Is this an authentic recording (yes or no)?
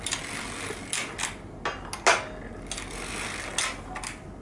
yes